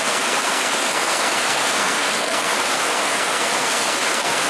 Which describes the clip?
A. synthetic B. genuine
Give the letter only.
A